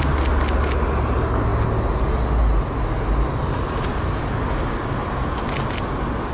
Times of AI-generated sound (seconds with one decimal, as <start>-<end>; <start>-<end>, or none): none